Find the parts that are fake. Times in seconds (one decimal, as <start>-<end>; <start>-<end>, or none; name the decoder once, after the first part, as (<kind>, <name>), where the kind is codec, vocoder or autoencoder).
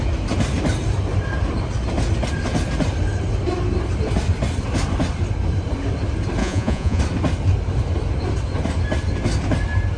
6.4-7.0 (vocoder, Vocos)